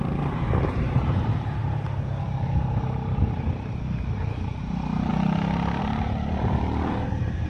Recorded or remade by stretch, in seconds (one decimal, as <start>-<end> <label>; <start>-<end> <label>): 0.0-5.1 remade; 5.1-5.8 recorded; 5.8-7.5 remade